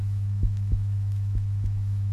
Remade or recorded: remade